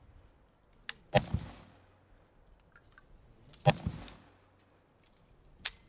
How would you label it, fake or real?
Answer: real